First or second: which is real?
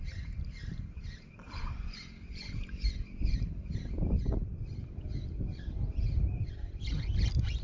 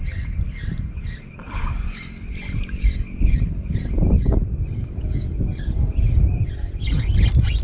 second